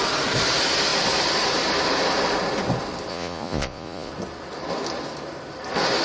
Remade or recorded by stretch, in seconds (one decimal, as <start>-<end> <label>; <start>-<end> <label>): 0.0-3.1 recorded; 3.1-4.1 remade; 4.1-6.0 recorded